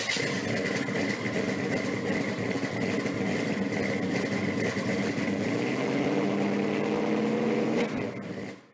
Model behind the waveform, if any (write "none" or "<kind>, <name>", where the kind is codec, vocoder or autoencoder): none